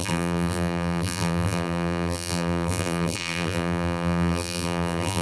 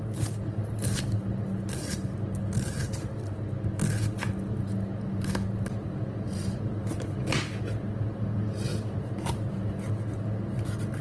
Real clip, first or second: second